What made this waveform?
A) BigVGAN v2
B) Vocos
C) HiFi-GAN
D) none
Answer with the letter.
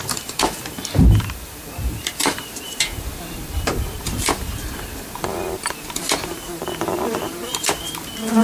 A